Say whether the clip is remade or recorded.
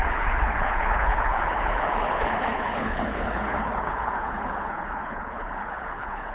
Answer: remade